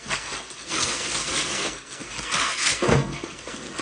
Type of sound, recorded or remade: remade